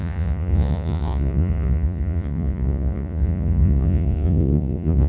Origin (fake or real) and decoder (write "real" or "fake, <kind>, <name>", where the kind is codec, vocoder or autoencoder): fake, vocoder, Vocos